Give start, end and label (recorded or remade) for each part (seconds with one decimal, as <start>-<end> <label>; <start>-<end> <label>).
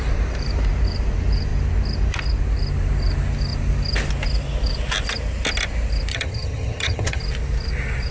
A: 0.0-6.1 recorded; 6.1-7.2 remade; 7.2-8.1 recorded